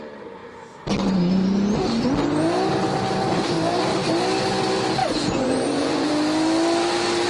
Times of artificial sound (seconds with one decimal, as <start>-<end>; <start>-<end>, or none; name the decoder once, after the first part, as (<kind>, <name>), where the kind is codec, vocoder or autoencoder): 5.0-6.1 (vocoder, Vocos)